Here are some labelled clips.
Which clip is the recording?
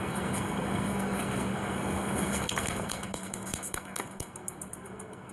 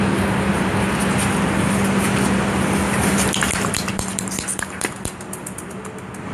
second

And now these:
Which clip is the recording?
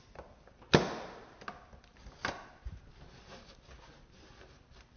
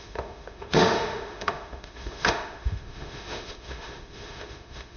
first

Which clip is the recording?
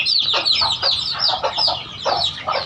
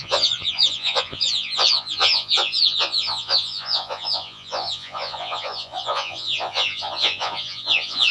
first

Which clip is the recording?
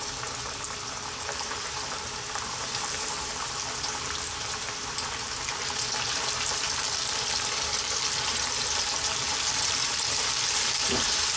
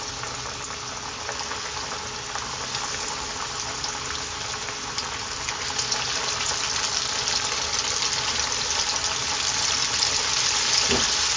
second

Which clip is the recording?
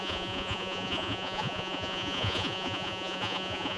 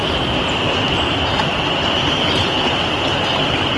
second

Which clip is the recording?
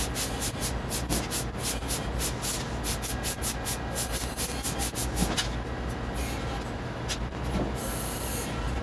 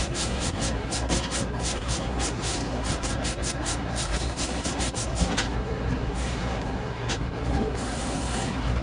first